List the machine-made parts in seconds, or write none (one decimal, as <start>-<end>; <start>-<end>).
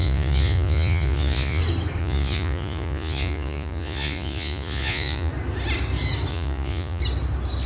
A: 0.0-1.6; 2.0-5.3; 6.3-7.0